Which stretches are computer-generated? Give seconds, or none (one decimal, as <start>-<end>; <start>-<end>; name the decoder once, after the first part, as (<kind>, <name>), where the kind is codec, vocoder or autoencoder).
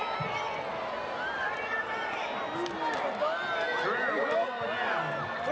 none